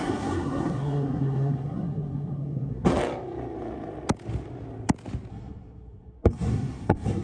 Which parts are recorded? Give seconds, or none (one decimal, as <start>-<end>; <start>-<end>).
2.9-5.3